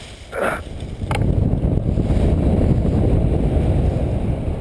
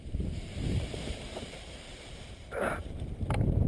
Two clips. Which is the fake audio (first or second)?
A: second